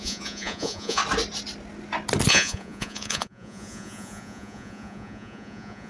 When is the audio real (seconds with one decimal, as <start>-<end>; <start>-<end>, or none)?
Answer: 1.0-2.3